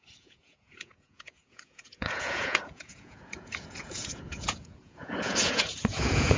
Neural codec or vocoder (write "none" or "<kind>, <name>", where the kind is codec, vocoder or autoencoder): vocoder, Vocos